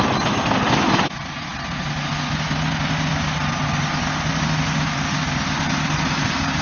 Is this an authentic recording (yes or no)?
yes